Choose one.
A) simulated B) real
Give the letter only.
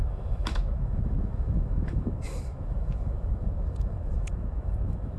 A